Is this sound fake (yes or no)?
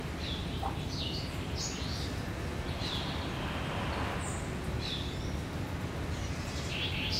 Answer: no